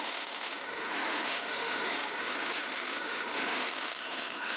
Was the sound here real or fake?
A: fake